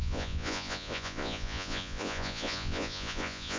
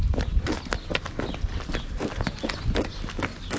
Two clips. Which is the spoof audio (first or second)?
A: first